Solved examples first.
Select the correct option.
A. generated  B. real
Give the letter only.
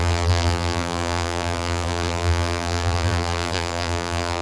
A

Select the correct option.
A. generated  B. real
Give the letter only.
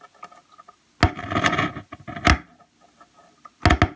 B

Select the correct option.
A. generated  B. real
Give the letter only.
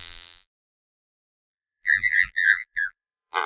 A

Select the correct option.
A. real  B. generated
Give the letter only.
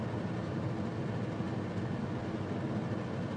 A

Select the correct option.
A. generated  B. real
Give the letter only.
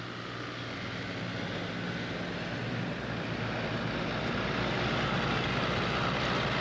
B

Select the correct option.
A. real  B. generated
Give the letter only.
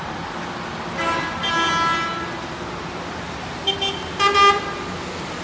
A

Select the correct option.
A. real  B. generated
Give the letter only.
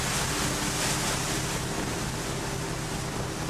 A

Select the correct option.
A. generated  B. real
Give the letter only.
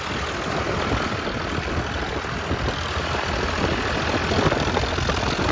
B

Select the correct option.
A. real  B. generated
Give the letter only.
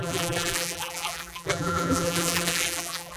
B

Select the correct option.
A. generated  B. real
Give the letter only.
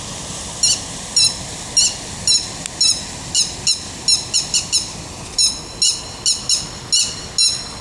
B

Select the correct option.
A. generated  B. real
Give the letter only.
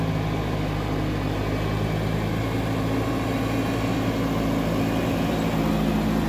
B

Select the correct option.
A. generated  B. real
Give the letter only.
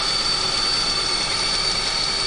B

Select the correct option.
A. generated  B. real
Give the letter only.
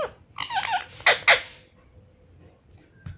B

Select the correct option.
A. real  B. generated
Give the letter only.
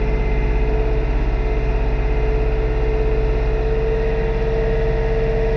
A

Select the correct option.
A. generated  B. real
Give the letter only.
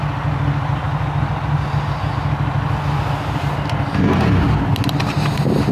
B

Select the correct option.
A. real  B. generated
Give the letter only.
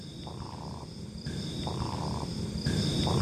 B